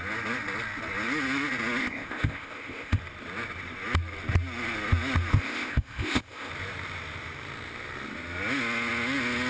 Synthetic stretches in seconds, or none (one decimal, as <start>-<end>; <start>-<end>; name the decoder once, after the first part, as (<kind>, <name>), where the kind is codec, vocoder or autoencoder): 1.8-3.0 (codec, ZipCodec); 5.3-6.5